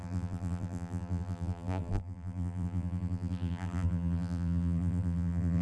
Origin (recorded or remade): remade